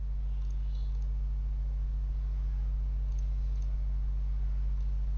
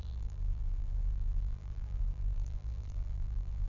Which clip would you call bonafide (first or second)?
first